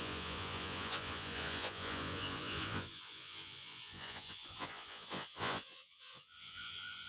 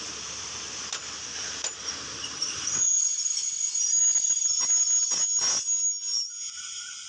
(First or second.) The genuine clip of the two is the second